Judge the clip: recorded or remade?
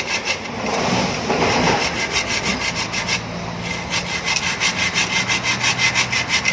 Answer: recorded